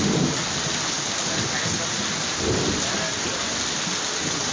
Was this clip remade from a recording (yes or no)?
no